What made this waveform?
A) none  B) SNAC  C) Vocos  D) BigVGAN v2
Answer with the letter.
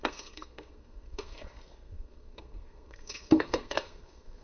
B